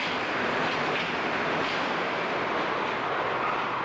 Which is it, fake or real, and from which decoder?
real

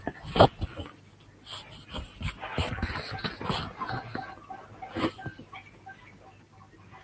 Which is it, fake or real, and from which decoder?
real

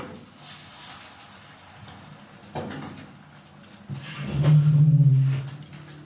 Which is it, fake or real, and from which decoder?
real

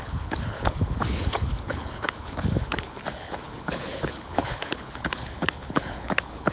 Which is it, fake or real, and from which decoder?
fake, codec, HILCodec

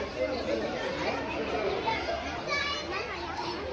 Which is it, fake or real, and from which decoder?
real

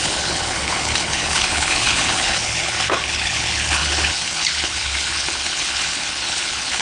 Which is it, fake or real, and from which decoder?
fake, codec, HILCodec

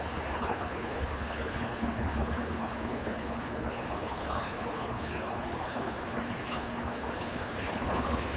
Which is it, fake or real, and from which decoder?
fake, codec, HILCodec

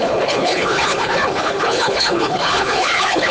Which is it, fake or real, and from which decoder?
fake, codec, HILCodec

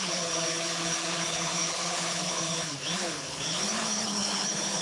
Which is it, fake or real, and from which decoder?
fake, codec, HILCodec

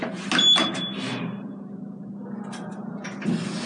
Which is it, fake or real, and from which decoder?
real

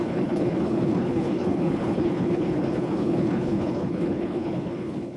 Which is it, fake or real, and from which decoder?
fake, codec, HILCodec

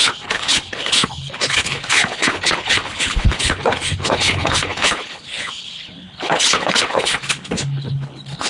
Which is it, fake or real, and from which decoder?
fake, codec, HILCodec